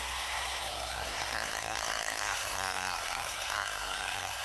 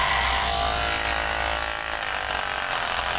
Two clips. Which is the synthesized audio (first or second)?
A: first